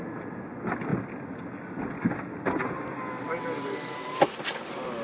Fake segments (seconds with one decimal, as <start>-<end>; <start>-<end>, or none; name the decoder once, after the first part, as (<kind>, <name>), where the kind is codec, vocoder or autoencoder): none